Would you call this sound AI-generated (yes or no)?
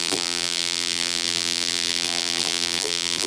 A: yes